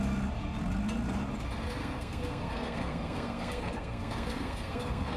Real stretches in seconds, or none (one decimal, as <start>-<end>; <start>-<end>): 0.0-1.8